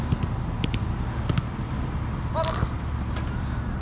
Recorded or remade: recorded